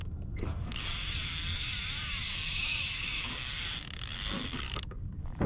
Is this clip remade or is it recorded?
remade